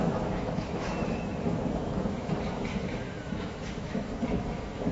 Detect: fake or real fake